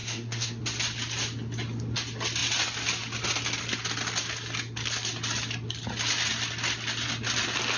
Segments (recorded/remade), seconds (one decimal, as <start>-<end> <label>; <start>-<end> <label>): 0.0-0.6 remade; 0.6-7.8 recorded